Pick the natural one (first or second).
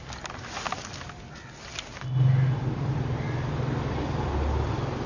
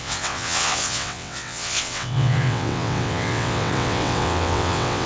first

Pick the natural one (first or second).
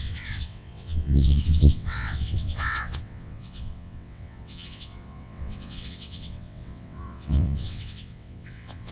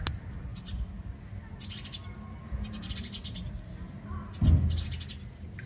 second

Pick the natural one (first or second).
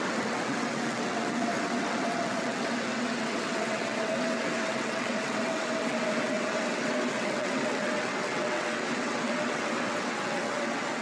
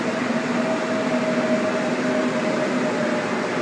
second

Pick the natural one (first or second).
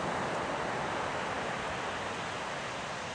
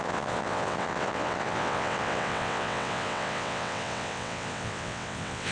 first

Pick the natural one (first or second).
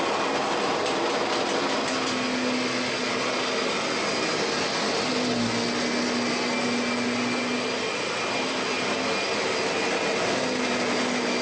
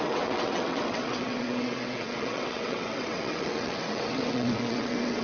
first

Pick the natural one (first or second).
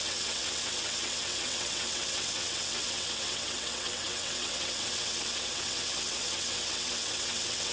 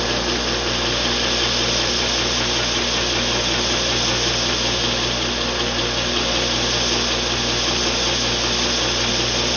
second